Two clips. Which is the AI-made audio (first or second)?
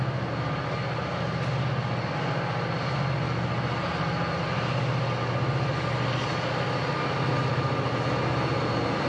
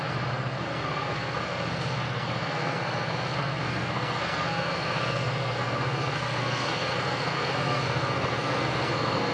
second